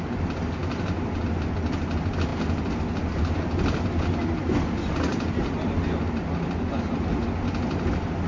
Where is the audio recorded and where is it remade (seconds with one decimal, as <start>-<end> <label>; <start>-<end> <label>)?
0.0-8.3 recorded